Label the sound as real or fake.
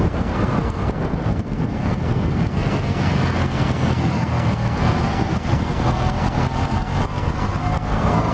fake